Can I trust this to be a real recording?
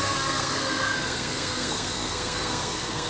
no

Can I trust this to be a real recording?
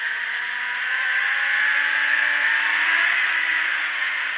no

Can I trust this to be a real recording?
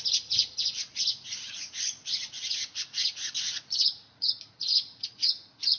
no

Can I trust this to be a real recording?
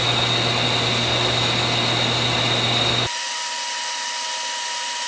yes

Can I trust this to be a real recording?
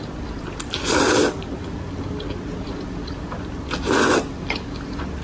yes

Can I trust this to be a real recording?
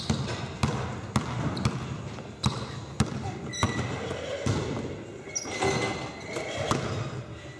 yes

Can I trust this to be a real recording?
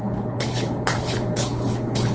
no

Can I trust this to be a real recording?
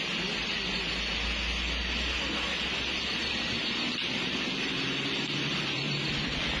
yes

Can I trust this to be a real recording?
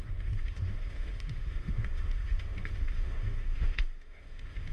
no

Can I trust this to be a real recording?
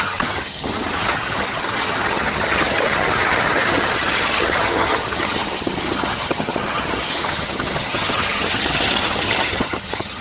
no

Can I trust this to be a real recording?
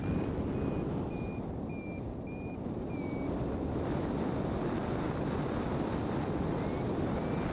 yes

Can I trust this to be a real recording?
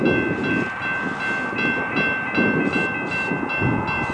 yes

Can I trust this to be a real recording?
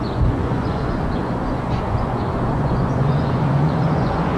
no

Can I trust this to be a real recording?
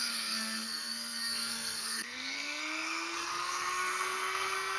no